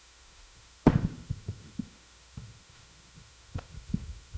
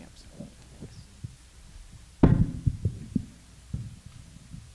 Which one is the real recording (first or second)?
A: second